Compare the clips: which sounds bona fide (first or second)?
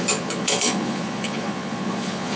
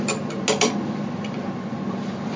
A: second